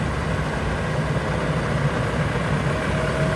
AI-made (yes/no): no